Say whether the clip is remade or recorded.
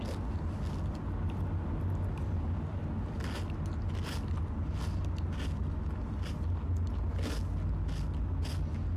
recorded